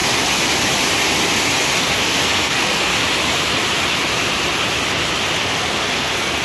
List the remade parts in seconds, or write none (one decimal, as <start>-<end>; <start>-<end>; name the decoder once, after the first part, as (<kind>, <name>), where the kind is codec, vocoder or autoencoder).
1.8-2.9 (codec, SNAC); 5.4-6.4